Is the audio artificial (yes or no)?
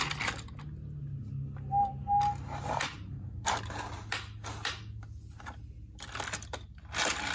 no